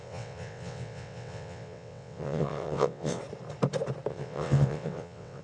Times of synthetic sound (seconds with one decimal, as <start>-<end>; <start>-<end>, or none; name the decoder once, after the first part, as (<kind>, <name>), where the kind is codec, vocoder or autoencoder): 0.0-3.2 (vocoder, WaveNeXt); 4.1-5.4